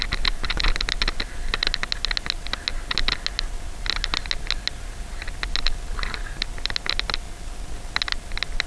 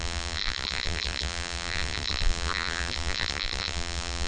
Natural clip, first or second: first